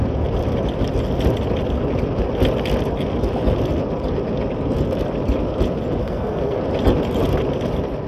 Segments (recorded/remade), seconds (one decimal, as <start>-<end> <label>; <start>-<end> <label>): 0.0-6.0 recorded; 6.0-6.6 remade; 6.6-8.1 recorded